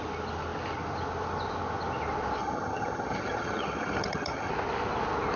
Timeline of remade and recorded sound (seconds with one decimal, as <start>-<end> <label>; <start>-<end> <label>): 0.0-2.4 recorded; 2.4-4.5 remade; 4.5-5.4 recorded

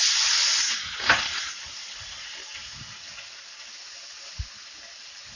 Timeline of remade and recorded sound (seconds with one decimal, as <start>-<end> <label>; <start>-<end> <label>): 0.0-5.4 recorded

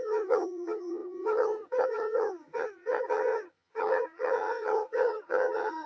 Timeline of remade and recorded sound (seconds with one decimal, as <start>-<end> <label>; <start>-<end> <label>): 0.0-5.9 remade

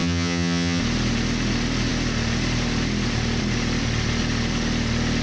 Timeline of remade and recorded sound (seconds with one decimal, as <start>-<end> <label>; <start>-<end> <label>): 0.0-0.8 remade; 0.8-5.2 recorded

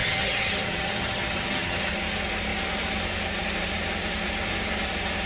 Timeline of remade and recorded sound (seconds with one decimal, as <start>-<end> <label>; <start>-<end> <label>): 0.0-1.9 remade; 1.9-5.3 recorded